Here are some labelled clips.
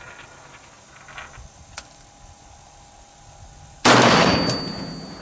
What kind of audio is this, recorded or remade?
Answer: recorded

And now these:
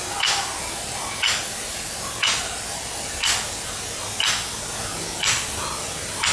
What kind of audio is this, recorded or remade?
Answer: recorded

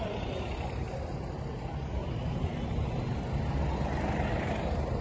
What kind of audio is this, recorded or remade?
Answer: remade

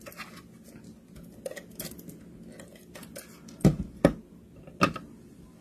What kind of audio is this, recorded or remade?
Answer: recorded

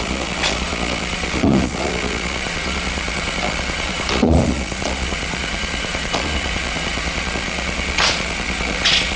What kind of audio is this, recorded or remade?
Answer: remade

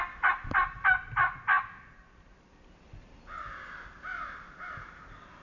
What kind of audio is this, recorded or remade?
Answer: recorded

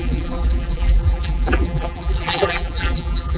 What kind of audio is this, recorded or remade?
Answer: remade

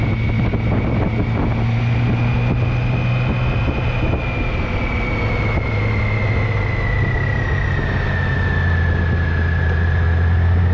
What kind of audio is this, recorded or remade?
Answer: recorded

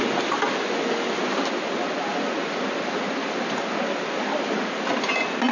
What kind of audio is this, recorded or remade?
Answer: recorded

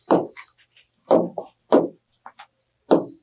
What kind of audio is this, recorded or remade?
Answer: recorded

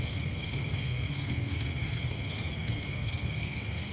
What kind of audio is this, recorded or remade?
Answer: remade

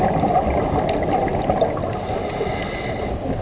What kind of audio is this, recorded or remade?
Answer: recorded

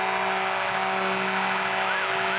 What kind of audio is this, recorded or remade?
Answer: recorded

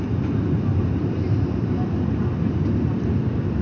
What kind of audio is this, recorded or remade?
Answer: recorded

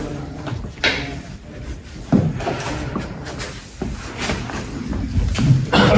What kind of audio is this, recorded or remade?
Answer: recorded